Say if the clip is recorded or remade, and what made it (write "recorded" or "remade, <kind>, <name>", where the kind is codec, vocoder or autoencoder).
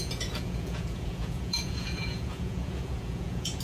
remade, vocoder, Vocos